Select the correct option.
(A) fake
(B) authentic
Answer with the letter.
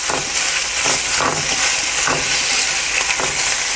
B